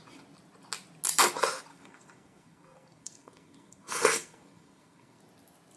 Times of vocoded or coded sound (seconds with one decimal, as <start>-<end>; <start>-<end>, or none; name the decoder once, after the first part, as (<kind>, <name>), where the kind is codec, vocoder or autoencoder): 1.7-5.2 (codec, SNAC)